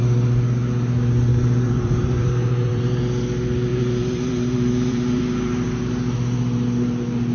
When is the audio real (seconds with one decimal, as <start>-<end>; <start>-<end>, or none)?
0.0-1.3; 3.0-3.7; 5.2-7.3